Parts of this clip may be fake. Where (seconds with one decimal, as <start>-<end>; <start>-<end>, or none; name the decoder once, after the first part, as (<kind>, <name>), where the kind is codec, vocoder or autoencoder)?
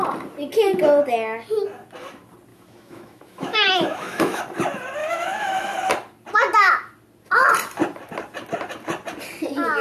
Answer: 2.5-4.4 (autoencoder, DAC-VAE); 5.0-5.8